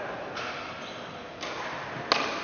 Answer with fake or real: real